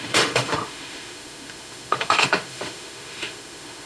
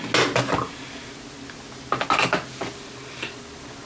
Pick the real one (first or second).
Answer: second